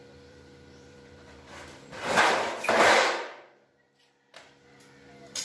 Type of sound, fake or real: fake